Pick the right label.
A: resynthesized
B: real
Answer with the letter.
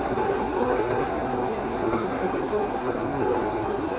A